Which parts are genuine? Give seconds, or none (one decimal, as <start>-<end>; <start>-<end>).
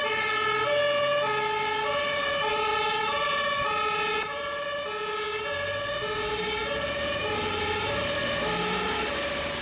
0.0-9.6